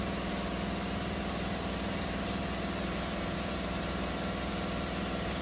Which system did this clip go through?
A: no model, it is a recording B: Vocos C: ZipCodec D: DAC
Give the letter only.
A